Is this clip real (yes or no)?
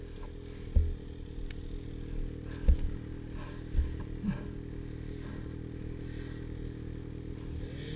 yes